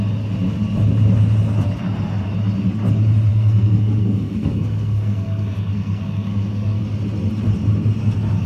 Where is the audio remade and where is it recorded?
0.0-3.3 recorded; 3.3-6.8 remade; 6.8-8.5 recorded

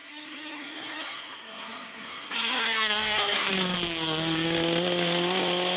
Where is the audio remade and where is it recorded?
0.0-3.5 remade; 3.5-5.8 recorded

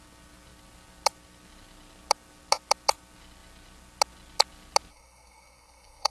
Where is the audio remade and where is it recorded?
0.0-4.9 recorded; 4.9-6.1 remade

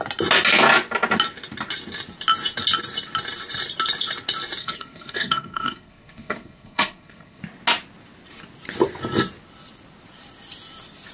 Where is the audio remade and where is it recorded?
0.0-4.6 recorded; 4.6-7.4 remade; 7.4-11.1 recorded